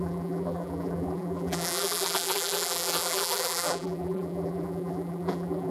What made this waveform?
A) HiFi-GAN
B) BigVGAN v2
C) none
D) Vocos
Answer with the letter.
B